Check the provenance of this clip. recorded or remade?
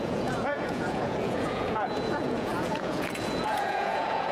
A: remade